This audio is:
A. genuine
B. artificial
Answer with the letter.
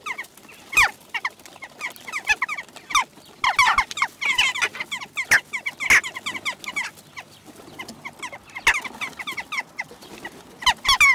A